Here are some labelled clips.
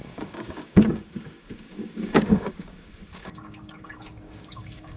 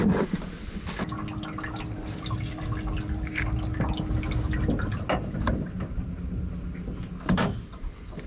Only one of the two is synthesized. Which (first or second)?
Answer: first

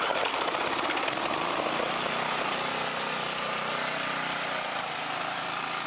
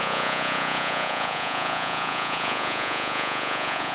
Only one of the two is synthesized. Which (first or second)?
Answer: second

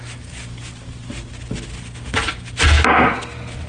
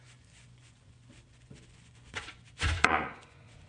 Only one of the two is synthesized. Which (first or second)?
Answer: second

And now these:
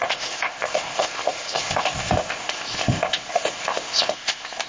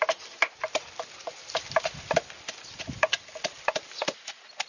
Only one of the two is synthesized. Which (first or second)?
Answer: first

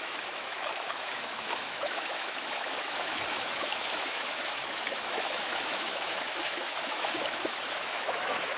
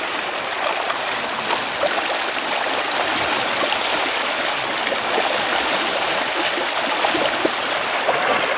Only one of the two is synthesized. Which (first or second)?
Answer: first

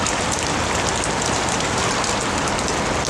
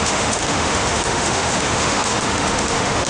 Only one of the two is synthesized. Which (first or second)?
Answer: second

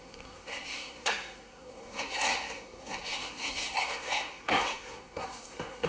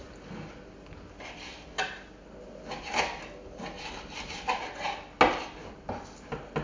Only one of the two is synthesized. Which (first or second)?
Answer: first